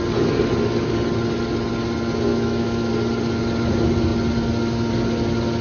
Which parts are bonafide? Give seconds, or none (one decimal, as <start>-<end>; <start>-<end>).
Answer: 0.0-2.3; 2.9-5.6